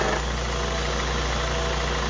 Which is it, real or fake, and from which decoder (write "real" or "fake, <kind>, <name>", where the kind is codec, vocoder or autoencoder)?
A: real